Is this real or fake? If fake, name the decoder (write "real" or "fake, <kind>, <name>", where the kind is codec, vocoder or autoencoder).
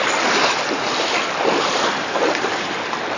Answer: real